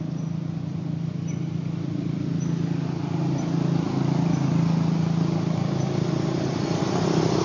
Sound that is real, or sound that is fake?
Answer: real